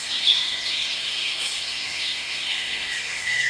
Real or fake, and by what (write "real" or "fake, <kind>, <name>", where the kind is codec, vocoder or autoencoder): fake, codec, SNAC